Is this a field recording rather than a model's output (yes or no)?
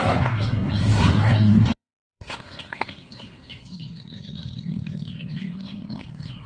no